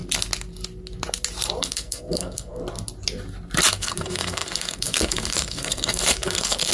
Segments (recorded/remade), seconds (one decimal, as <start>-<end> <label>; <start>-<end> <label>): 0.0-1.6 recorded; 1.6-2.6 remade; 2.6-3.7 recorded; 3.7-6.7 remade